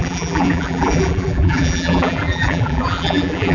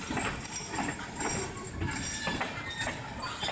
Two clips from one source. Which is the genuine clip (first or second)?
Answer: second